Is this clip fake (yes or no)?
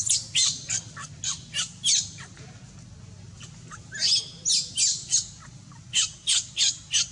no